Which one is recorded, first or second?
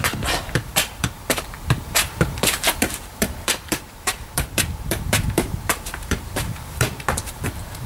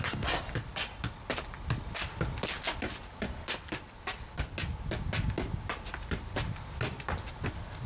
second